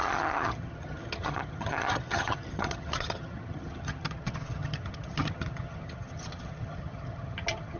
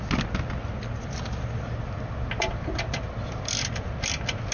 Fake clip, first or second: first